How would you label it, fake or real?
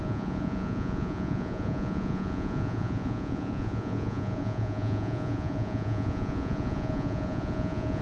fake